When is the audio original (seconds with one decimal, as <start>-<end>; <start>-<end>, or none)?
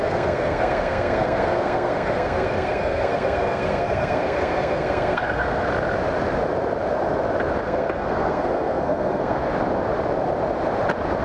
5.7-7.6; 9.4-11.2